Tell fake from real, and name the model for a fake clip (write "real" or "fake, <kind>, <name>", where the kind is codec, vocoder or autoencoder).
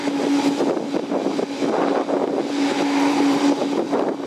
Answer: real